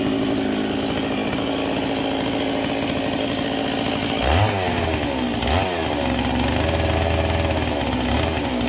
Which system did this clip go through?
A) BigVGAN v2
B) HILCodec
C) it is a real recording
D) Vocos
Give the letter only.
C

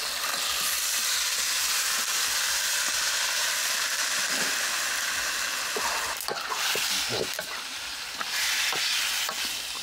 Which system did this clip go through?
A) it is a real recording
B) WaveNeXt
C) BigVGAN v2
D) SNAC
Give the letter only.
A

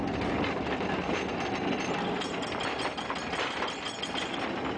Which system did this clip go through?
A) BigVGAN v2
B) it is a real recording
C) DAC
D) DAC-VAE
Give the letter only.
B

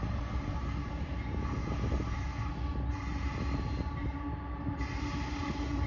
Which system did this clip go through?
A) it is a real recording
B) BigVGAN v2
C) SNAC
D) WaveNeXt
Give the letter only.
A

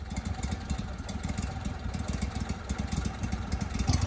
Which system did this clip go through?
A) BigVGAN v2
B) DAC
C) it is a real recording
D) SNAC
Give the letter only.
A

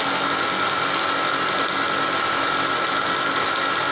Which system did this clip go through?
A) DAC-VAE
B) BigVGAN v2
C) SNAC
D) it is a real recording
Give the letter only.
D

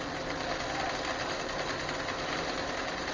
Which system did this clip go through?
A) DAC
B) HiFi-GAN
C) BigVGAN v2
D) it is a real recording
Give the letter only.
D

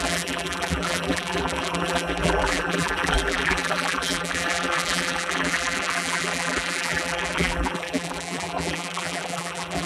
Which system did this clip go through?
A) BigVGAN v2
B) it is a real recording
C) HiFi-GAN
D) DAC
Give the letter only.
A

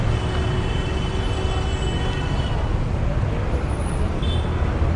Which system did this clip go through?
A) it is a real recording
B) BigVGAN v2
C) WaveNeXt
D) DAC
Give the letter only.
A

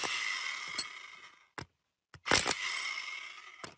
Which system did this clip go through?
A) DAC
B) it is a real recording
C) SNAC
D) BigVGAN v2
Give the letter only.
B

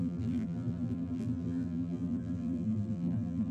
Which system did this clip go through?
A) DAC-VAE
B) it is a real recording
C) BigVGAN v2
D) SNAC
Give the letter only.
C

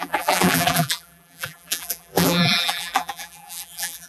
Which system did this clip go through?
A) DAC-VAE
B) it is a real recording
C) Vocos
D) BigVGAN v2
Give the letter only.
D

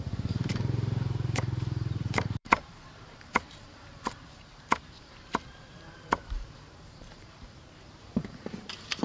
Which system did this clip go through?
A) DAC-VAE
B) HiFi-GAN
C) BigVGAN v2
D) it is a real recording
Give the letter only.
C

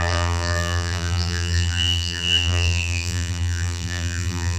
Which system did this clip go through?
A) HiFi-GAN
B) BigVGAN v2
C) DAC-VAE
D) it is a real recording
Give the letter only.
B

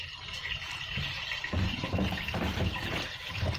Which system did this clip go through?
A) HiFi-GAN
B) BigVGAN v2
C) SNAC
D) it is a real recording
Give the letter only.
B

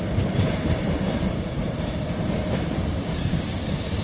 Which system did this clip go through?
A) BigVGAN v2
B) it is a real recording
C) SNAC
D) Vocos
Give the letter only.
A